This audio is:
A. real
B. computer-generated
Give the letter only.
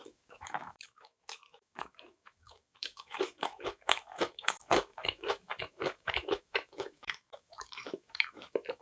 B